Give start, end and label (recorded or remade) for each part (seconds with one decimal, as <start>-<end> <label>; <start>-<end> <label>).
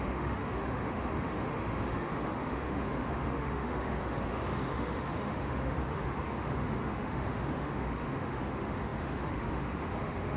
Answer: 0.0-10.4 remade